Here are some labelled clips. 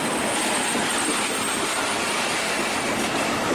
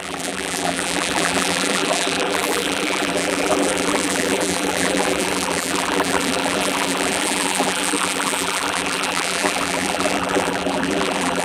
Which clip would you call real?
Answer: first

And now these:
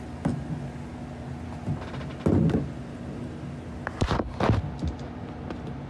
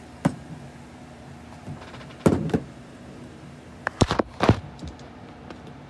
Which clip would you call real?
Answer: first